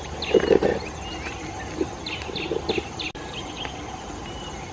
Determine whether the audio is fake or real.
real